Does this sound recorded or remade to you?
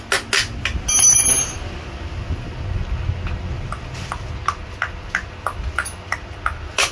recorded